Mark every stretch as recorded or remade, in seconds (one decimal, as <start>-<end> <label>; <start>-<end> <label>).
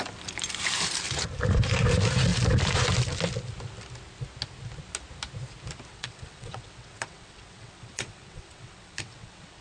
0.0-5.9 recorded; 5.9-9.6 remade